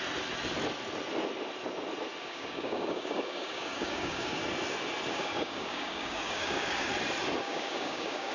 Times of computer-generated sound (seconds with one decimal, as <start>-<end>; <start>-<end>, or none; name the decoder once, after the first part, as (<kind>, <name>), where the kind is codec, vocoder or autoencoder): 2.2-4.4 (codec, DAC); 5.1-6.9; 7.4-8.3